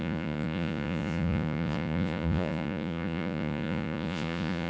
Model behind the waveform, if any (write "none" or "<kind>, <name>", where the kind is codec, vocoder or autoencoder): vocoder, Vocos